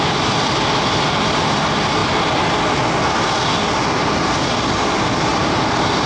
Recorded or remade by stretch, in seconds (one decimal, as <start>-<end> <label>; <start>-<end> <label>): 0.0-5.3 recorded; 5.3-6.1 remade